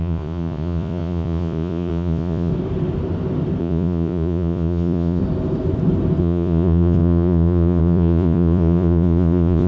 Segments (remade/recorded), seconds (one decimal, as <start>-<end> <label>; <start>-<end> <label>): 0.0-2.5 remade; 2.5-3.6 recorded; 3.6-5.2 remade; 5.2-6.2 recorded; 6.2-9.7 remade